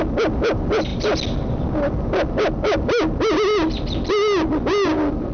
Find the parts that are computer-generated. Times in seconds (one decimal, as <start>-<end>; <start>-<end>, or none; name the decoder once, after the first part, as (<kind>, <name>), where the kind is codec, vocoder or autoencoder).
none